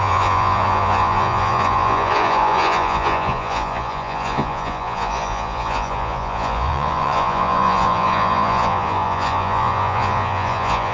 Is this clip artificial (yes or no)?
yes